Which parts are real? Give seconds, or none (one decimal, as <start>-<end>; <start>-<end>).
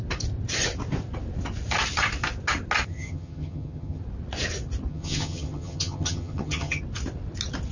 0.0-2.9; 4.0-4.9; 6.8-7.7